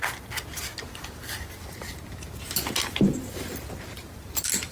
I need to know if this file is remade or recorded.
recorded